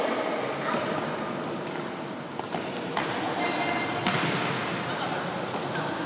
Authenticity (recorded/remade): recorded